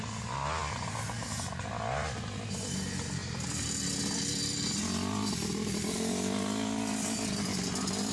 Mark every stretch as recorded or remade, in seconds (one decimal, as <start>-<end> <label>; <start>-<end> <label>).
0.0-8.1 recorded